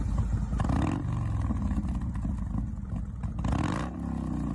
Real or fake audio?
real